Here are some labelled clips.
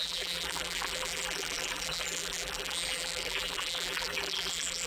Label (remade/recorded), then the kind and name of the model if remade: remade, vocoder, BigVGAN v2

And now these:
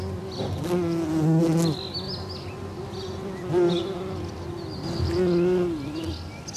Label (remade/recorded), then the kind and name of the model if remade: recorded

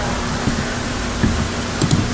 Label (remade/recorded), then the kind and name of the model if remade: recorded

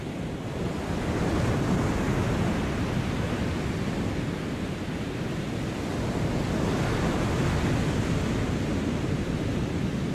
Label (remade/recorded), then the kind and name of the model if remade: recorded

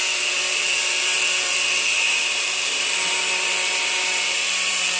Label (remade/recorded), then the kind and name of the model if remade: remade, vocoder, BigVGAN v2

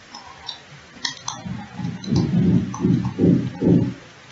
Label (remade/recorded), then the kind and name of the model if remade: recorded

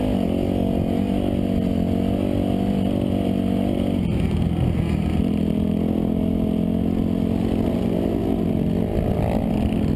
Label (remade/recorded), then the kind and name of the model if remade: recorded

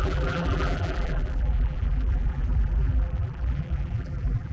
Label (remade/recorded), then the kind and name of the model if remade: remade, vocoder, BigVGAN v2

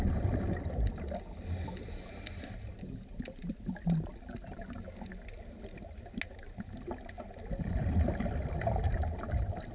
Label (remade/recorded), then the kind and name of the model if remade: recorded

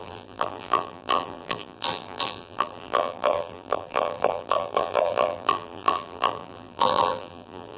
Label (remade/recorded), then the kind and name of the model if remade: remade, vocoder, BigVGAN v2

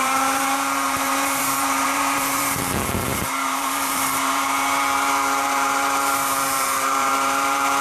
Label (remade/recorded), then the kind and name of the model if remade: remade, vocoder, BigVGAN v2